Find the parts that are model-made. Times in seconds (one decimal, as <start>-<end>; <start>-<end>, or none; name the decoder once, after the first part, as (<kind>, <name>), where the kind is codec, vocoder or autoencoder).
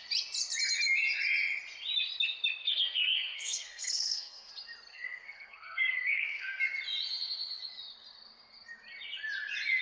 2.6-4.5 (codec, SNAC); 4.9-6.6